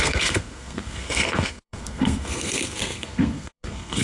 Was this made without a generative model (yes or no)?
no